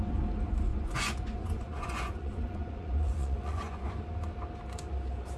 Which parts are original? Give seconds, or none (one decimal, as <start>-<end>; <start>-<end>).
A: 0.0-0.7; 3.9-5.4